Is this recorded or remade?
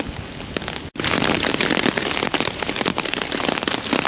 recorded